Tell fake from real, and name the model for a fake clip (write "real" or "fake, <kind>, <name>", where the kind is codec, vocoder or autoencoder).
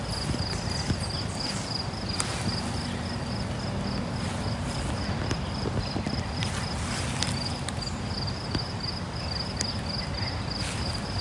real